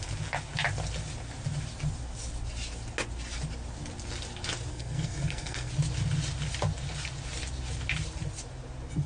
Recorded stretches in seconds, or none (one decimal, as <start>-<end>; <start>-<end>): 0.0-4.7; 5.7-9.1